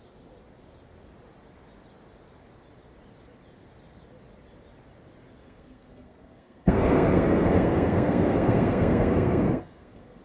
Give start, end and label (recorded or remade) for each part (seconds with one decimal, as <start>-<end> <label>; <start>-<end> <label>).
0.0-5.4 recorded; 5.4-10.2 remade